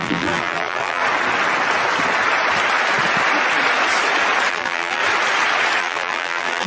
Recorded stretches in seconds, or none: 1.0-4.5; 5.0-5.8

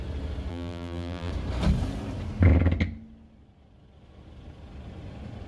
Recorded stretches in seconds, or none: 0.0-0.5; 1.3-5.5